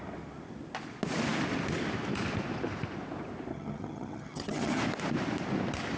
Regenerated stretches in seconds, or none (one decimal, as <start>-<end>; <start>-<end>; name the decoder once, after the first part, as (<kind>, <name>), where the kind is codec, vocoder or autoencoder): 3.5-4.8 (vocoder, HiFi-GAN)